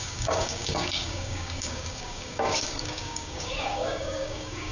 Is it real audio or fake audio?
fake